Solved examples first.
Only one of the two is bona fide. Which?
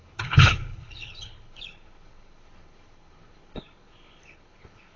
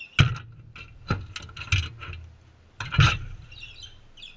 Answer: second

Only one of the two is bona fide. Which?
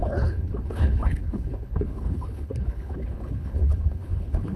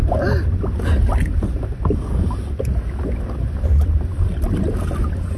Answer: second